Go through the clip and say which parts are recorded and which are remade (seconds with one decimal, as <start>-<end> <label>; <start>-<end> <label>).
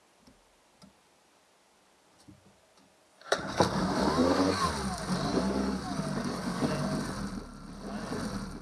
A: 0.0-3.1 recorded; 3.1-4.7 remade; 4.7-5.3 recorded; 5.3-6.7 remade; 6.7-8.6 recorded